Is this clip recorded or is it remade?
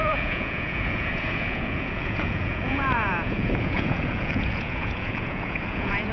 remade